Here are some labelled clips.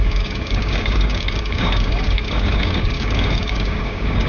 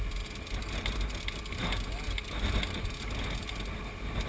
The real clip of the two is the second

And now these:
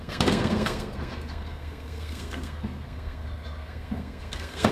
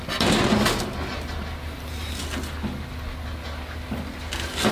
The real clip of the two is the second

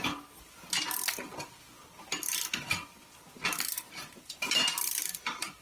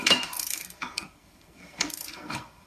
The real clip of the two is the first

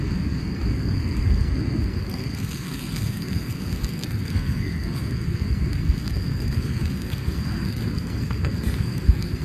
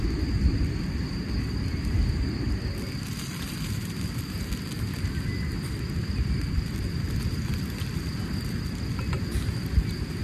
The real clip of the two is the second